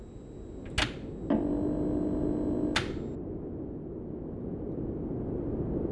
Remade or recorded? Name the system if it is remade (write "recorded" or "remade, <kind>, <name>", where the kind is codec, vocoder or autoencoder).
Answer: recorded